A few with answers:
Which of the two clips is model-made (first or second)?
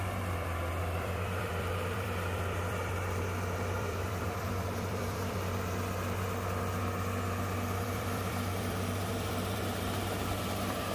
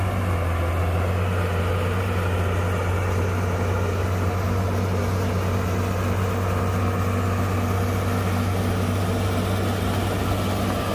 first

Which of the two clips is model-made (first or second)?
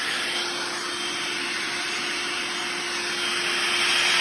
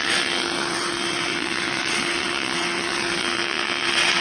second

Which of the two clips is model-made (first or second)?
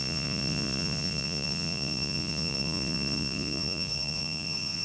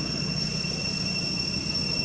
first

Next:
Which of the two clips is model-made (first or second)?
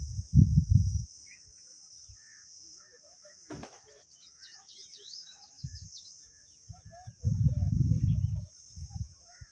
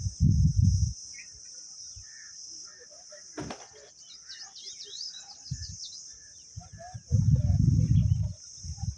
first